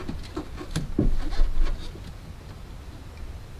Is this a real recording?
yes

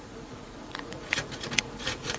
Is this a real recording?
no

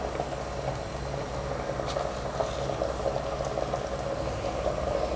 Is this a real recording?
yes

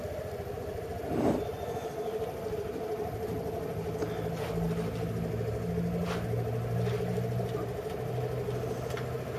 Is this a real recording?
yes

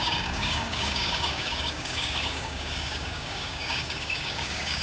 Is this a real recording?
no